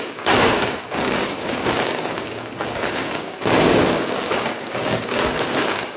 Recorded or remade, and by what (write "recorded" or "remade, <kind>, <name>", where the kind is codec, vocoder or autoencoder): remade, codec, DAC